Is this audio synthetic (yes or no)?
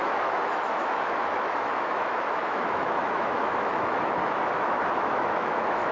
yes